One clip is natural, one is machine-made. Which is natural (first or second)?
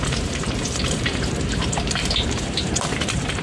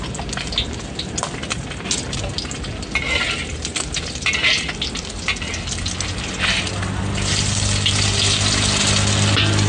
second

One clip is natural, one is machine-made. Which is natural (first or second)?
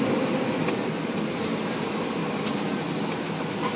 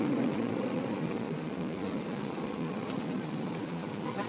first